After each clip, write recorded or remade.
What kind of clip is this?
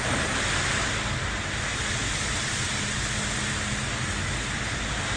recorded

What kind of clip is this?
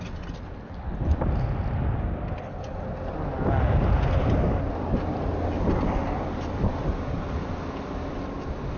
recorded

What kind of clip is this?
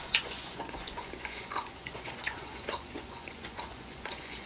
remade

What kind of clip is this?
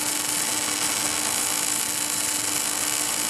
recorded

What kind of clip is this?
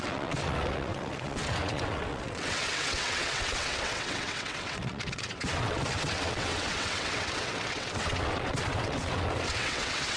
remade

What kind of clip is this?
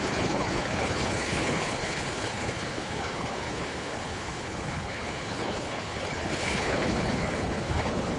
remade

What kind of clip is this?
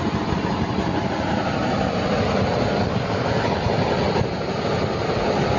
recorded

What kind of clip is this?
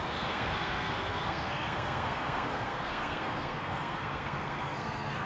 remade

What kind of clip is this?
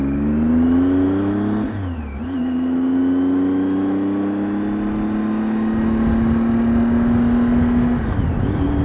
recorded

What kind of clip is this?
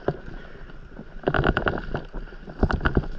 recorded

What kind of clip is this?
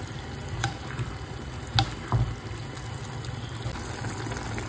recorded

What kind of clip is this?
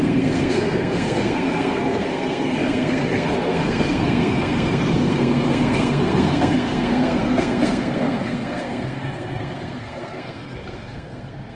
remade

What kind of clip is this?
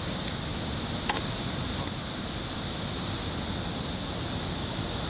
recorded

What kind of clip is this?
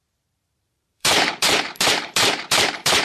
remade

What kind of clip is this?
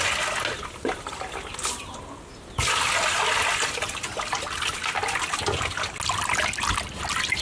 recorded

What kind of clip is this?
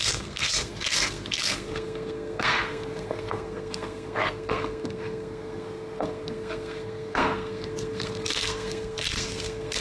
remade